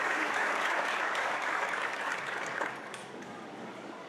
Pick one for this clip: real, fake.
fake